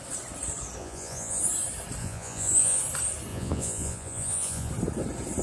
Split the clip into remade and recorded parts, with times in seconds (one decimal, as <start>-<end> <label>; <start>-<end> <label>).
0.0-0.8 recorded; 0.8-1.4 remade; 1.4-2.0 recorded; 2.0-2.8 remade; 2.8-3.3 recorded; 3.3-4.7 remade; 4.7-5.4 recorded